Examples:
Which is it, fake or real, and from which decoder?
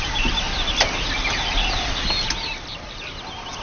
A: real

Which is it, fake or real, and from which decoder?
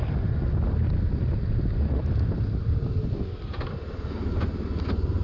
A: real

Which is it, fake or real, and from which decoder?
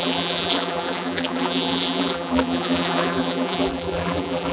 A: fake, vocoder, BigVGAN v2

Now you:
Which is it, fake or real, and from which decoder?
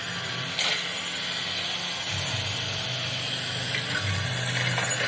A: real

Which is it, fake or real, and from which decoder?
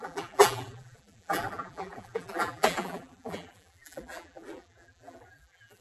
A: fake, vocoder, BigVGAN v2